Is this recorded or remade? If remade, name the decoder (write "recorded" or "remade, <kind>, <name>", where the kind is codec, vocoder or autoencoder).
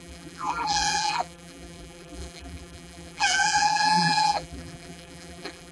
remade, vocoder, BigVGAN v2